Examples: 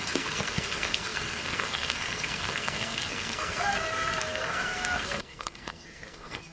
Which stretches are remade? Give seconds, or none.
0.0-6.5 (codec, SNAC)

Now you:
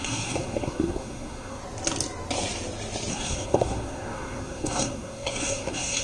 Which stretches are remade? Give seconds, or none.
0.0-1.6 (codec, SNAC); 3.1-6.0

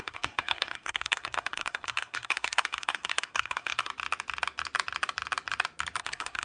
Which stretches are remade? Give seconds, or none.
0.0-3.9 (codec, SNAC); 6.0-6.4

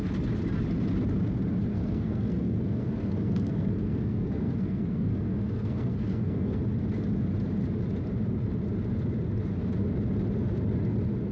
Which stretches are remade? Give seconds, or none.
1.7-6.6 (codec, SNAC)

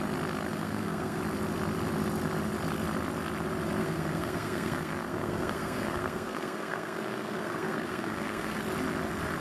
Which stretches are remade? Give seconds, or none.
0.5-1.2 (codec, SNAC); 3.8-8.6